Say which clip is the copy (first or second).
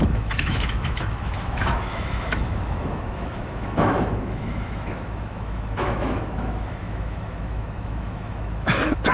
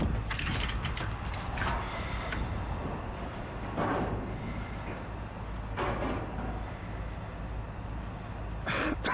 first